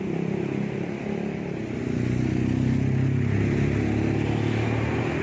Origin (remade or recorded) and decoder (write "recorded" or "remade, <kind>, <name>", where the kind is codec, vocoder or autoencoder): recorded